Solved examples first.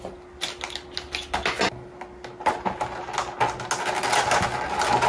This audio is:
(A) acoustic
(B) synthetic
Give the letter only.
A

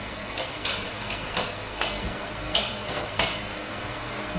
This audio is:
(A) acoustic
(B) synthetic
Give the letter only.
B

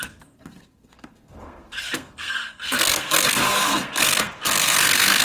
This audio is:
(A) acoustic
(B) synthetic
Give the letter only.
B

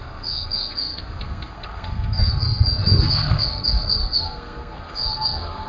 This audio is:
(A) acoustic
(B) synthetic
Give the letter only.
B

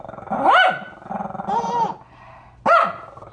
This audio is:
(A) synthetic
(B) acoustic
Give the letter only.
B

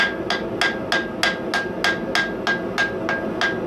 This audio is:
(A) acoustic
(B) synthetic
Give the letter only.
A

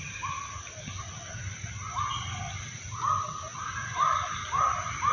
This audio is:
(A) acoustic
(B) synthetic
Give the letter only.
A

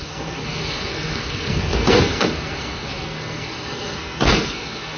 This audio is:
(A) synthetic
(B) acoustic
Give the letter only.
A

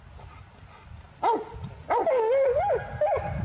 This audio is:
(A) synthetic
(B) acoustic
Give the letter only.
B